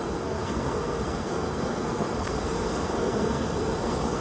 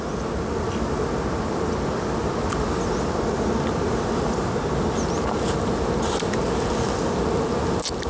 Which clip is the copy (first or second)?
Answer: first